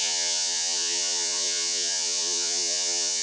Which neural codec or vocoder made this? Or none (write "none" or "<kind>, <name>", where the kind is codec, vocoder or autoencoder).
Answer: vocoder, Vocos